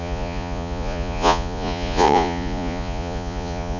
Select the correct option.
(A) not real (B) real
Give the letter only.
A